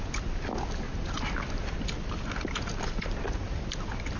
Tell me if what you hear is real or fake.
real